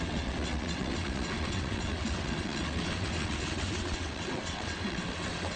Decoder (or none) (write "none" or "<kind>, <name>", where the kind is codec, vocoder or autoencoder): vocoder, WaveNeXt